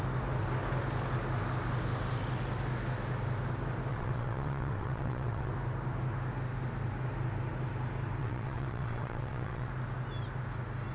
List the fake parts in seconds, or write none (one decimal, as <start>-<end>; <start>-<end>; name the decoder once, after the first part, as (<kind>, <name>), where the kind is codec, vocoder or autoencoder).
3.9-5.5 (vocoder, WaveNeXt); 8.2-9.7